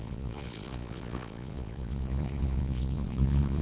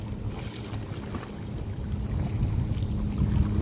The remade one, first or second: first